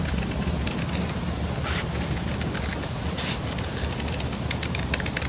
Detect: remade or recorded recorded